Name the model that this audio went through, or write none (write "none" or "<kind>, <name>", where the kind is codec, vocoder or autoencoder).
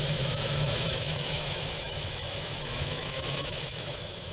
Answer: autoencoder, DAC-VAE